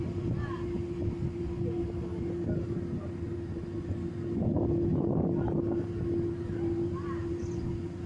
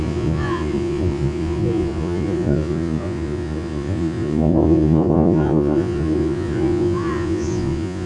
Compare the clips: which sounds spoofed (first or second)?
second